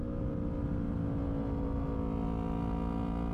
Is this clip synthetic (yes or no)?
no